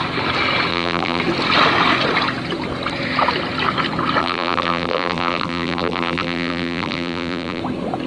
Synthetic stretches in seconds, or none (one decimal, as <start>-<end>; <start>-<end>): 0.7-1.2; 4.2-7.6